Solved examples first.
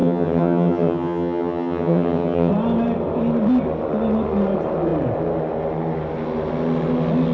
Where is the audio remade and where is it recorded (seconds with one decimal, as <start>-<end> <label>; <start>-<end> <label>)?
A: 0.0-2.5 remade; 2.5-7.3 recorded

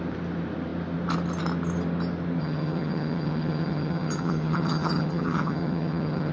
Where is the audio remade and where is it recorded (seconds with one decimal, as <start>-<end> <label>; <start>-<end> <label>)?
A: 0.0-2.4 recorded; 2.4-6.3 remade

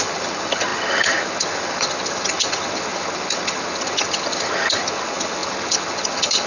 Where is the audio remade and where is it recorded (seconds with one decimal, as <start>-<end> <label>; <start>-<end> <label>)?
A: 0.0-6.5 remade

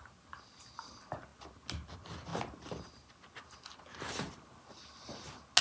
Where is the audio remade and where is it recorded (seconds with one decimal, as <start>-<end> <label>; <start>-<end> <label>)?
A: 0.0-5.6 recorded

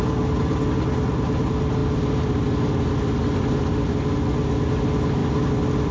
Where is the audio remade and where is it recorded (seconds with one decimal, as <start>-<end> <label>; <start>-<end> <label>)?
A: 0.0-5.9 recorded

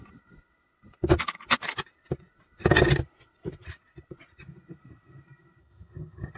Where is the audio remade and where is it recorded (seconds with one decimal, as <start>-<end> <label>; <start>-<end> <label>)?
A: 0.0-5.6 recorded; 5.6-6.4 remade

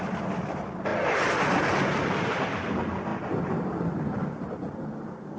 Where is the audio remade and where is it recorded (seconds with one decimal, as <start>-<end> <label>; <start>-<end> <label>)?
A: 0.0-5.4 recorded

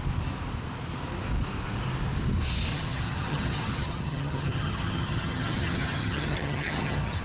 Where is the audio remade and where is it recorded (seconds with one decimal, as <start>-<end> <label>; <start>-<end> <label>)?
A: 0.0-2.7 recorded; 2.7-7.2 remade